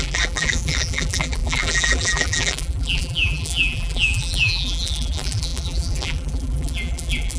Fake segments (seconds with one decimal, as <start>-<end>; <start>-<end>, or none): 0.0-7.4